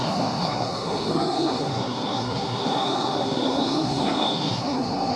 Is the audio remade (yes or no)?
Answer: yes